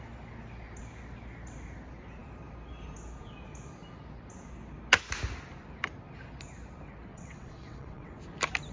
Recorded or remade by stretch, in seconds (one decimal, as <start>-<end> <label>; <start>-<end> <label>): 0.0-7.1 recorded; 7.1-8.2 remade; 8.2-8.7 recorded